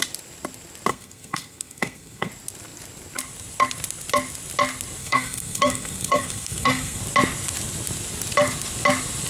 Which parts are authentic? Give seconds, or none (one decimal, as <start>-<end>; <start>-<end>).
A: 0.0-0.9; 2.3-5.0; 7.0-9.3